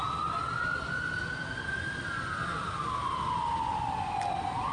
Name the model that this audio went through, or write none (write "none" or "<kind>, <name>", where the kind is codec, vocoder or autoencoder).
none